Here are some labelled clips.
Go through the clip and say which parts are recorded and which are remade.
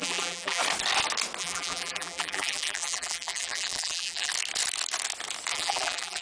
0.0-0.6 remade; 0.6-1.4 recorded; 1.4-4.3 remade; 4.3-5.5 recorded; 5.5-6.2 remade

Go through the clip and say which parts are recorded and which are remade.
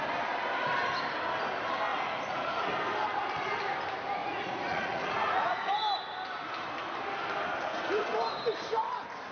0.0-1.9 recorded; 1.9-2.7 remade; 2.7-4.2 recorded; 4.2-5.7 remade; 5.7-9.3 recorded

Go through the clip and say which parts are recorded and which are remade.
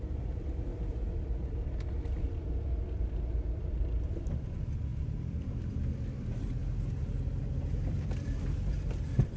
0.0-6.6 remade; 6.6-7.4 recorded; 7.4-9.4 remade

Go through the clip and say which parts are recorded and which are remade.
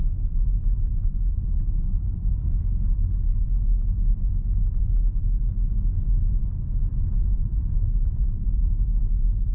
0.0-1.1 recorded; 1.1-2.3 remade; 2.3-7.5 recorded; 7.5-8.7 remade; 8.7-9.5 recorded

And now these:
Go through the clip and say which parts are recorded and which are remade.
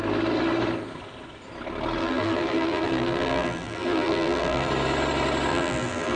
0.0-2.0 recorded; 2.0-4.7 remade; 4.7-5.5 recorded; 5.5-6.2 remade